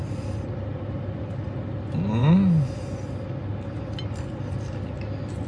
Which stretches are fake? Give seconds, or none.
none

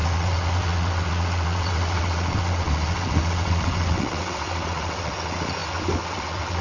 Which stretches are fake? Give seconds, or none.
0.0-6.6 (vocoder, WaveNeXt)

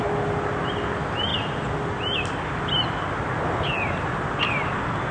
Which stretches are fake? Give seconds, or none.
none

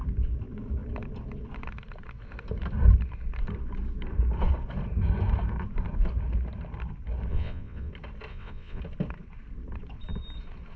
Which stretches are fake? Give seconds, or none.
7.3-7.9 (vocoder, WaveNeXt); 8.3-8.8

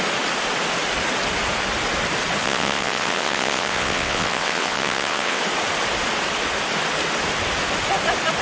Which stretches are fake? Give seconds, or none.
2.4-5.4 (vocoder, WaveNeXt)

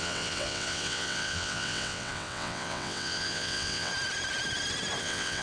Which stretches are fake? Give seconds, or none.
0.0-3.9 (vocoder, WaveNeXt); 5.0-5.4

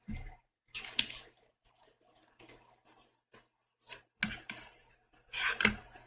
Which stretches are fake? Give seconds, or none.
none